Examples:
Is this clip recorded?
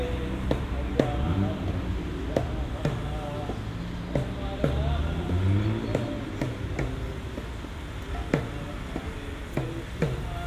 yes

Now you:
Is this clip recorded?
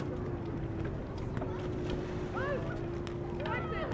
yes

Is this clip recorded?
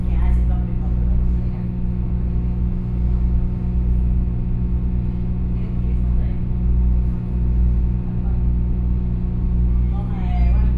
yes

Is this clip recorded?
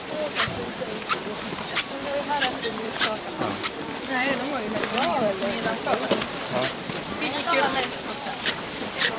no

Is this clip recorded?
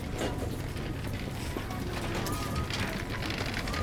yes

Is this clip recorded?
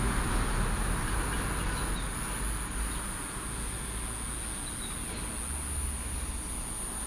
yes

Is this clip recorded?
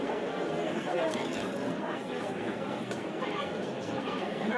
no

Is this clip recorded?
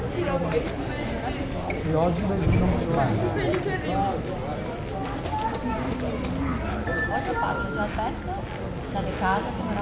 yes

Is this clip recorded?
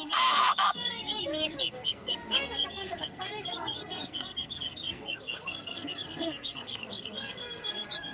no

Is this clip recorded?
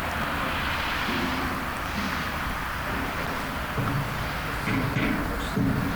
yes